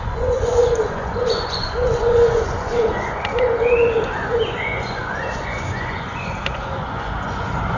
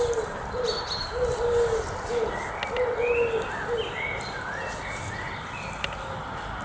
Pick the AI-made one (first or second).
first